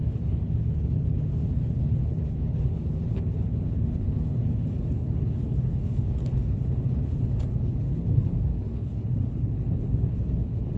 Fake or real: fake